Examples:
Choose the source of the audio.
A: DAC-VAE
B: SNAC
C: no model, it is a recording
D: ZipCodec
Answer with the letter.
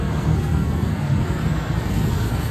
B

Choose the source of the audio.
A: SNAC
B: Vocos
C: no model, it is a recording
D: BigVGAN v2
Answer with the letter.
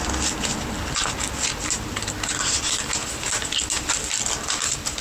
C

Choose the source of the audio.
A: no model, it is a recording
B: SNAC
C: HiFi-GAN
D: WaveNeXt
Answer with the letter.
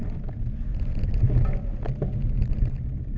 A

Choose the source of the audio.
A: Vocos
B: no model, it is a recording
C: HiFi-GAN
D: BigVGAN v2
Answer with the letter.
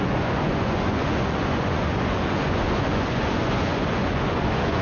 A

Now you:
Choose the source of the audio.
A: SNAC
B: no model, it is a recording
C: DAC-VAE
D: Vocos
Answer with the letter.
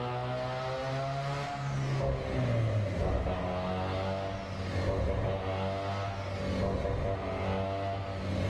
B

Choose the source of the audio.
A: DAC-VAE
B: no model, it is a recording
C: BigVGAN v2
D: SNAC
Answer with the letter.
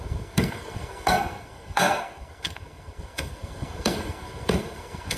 D